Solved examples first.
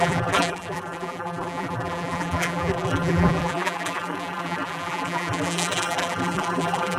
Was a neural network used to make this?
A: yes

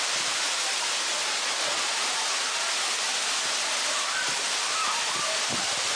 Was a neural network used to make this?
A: no